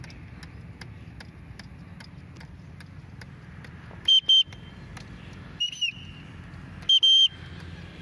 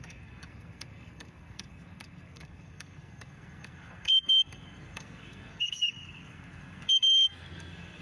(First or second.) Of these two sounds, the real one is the first